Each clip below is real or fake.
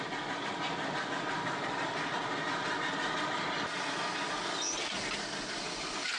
real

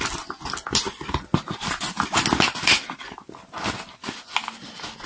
real